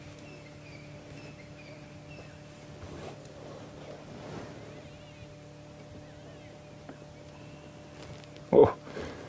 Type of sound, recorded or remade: recorded